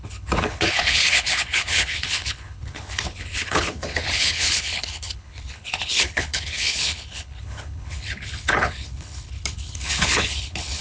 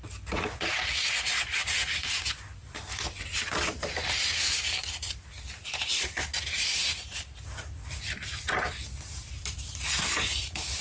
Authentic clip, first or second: second